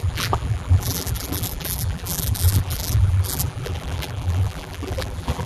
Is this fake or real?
fake